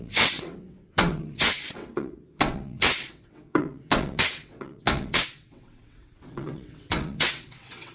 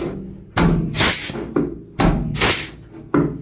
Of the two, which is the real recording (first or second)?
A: second